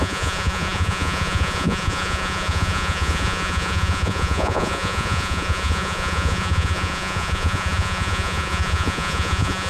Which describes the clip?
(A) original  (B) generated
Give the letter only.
B